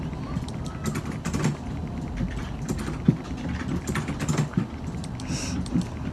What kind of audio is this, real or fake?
real